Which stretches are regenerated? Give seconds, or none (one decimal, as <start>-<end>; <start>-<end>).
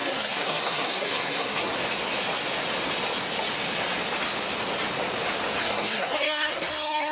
0.0-1.7; 5.6-7.1